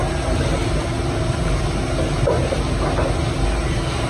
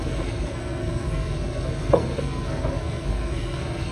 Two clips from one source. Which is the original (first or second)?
first